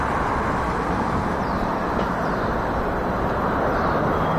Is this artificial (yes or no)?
no